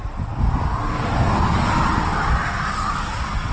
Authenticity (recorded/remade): recorded